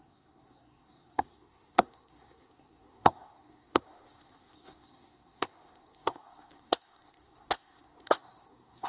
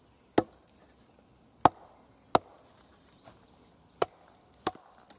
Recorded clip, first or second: second